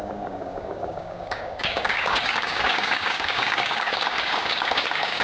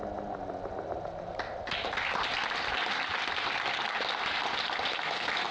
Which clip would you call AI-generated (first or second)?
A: first